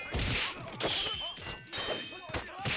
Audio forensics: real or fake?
real